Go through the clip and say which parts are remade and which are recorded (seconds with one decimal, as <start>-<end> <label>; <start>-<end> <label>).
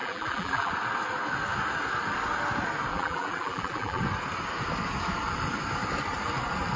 0.0-0.7 remade; 0.7-2.9 recorded; 2.9-4.0 remade; 4.0-6.8 recorded